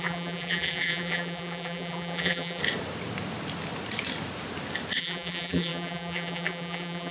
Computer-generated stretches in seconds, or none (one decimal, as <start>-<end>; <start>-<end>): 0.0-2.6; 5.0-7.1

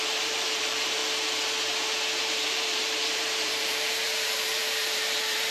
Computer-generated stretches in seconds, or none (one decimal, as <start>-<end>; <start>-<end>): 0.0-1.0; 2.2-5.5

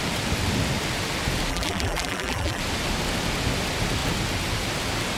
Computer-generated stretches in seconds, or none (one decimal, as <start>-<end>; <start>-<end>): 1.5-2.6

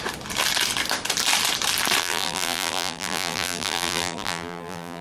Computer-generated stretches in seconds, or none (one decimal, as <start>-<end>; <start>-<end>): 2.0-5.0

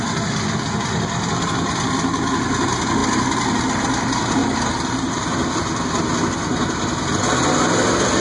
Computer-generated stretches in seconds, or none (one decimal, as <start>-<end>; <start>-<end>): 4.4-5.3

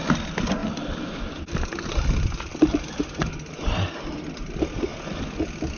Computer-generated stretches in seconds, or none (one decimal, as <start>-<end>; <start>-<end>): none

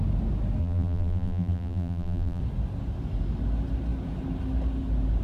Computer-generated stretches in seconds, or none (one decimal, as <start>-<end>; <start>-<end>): 0.6-2.4

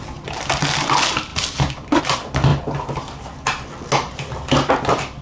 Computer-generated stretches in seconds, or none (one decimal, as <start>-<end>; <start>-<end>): none